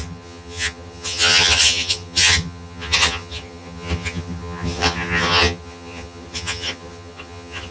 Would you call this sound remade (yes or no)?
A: yes